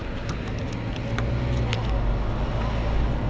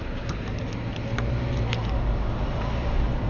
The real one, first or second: first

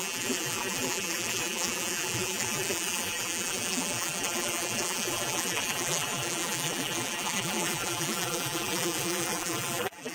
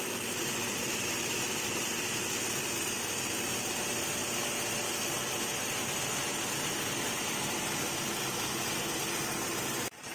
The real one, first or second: second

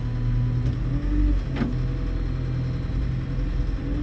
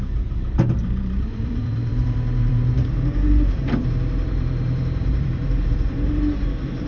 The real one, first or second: first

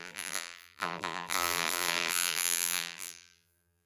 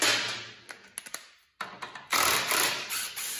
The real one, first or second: second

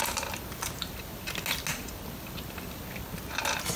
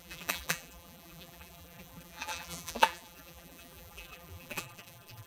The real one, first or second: first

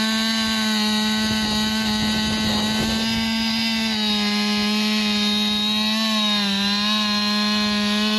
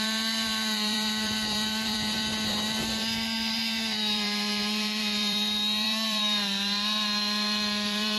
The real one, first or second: first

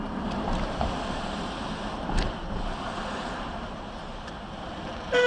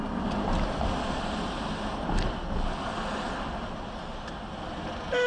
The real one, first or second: second